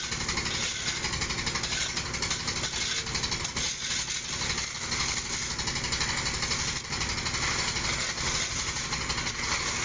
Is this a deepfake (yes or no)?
no